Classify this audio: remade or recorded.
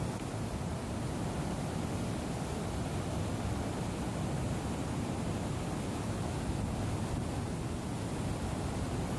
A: recorded